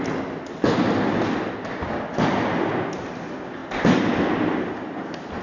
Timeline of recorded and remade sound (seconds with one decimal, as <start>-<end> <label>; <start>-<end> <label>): 0.0-5.4 recorded